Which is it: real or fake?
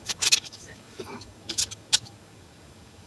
fake